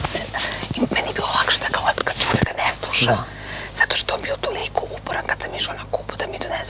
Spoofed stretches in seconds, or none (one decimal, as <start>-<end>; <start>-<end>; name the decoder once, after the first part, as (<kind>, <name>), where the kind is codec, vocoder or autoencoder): 2.0-2.7 (codec, HILCodec)